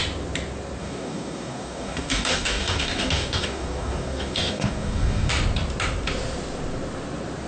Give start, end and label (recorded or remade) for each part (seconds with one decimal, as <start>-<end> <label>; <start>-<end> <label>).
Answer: 0.0-0.8 recorded; 0.8-5.3 remade; 5.3-7.5 recorded